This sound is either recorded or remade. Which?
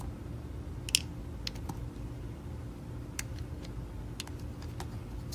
recorded